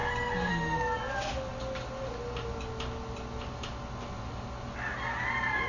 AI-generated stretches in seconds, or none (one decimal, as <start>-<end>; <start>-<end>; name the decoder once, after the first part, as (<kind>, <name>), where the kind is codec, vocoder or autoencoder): none